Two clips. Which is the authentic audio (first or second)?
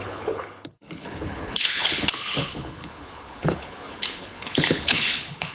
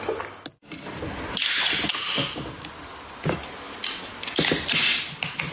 second